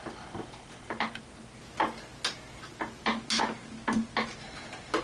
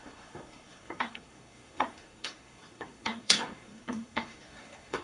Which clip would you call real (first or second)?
first